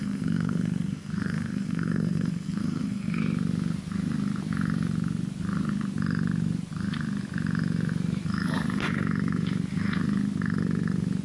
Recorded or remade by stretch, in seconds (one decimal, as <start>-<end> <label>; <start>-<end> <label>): 0.0-3.2 remade; 3.2-11.2 recorded